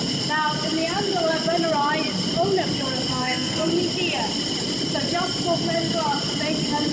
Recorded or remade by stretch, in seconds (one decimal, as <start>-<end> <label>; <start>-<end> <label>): 0.0-3.1 recorded; 3.1-3.7 remade; 3.7-6.9 recorded